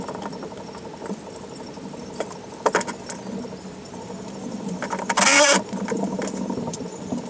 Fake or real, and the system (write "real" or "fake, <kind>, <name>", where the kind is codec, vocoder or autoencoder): real